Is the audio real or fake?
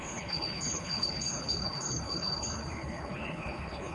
fake